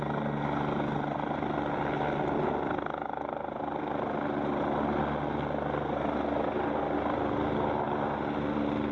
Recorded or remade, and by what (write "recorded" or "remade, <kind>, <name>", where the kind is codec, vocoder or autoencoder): recorded